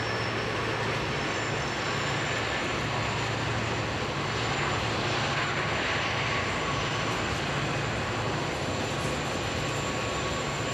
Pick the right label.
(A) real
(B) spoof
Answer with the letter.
A